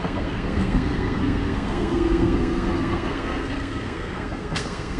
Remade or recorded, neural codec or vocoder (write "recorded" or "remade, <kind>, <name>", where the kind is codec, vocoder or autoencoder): remade, codec, SNAC